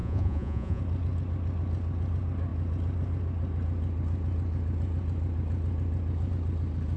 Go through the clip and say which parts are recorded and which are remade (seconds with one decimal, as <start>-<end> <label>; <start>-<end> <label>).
0.0-0.8 remade; 0.8-7.0 recorded

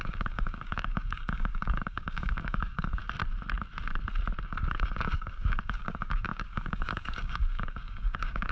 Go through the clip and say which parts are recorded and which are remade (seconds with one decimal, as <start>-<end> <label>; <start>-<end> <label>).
0.0-3.0 remade; 3.0-4.4 recorded; 4.4-8.5 remade

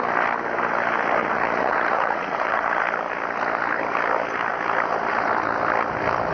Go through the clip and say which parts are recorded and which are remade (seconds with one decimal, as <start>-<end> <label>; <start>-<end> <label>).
0.0-1.2 recorded; 1.2-2.8 remade; 2.8-6.3 recorded

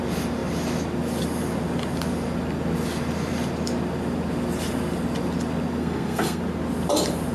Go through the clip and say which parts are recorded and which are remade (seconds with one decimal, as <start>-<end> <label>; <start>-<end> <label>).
0.0-5.8 recorded; 5.8-6.4 remade; 6.4-7.3 recorded

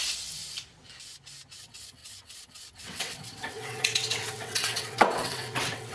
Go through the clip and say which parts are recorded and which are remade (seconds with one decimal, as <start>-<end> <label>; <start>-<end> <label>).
0.0-0.4 remade; 0.4-1.6 recorded; 1.6-5.9 remade

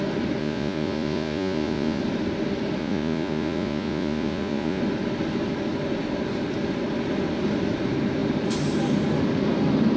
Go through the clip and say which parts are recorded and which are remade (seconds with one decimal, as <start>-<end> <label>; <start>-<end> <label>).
0.0-0.4 recorded; 0.4-2.0 remade; 2.0-2.8 recorded; 2.8-4.8 remade; 4.8-10.0 recorded

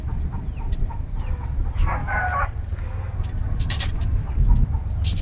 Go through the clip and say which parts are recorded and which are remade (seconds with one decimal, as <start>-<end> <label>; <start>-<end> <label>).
0.0-2.0 recorded; 2.0-2.7 remade; 2.7-3.4 recorded; 3.4-4.0 remade; 4.0-5.2 recorded